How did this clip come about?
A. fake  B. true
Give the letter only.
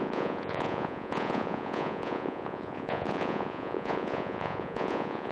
A